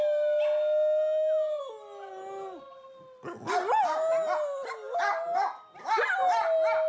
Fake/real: real